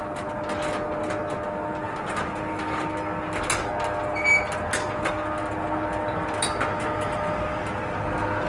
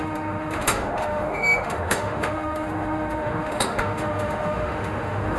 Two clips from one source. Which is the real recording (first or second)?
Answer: first